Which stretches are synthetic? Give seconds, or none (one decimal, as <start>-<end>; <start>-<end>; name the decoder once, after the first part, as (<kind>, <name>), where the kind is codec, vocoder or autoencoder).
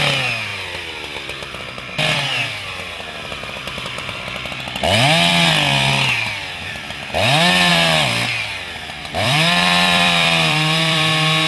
0.5-4.6 (vocoder, BigVGAN v2); 9.0-11.1